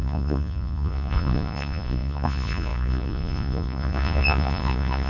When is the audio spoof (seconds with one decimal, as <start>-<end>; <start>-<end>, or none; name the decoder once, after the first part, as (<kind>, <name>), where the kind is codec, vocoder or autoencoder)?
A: 0.0-5.1 (vocoder, Vocos)